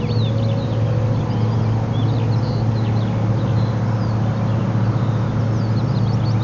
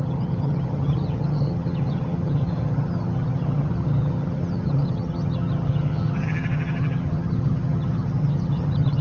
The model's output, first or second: second